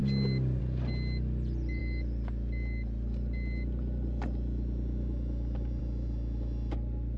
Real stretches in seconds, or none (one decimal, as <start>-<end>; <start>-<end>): 0.0-7.2

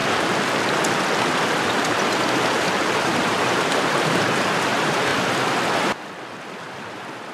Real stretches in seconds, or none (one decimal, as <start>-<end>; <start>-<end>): 0.0-2.8; 5.1-6.6

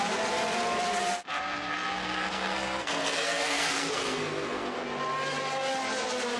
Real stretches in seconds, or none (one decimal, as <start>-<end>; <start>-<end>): 0.0-1.0; 4.8-6.4

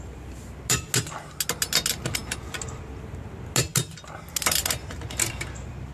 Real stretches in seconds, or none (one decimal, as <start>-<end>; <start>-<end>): 0.0-5.9